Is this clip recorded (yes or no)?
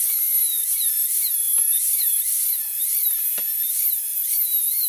yes